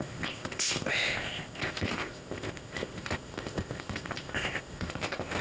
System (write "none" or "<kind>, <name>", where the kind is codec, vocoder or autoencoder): codec, ZipCodec